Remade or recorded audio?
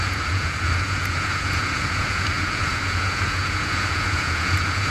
remade